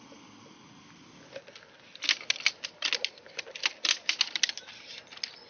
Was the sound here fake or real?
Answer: real